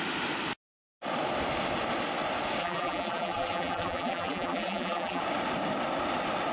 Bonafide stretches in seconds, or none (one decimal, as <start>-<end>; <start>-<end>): 0.0-2.6; 5.2-6.5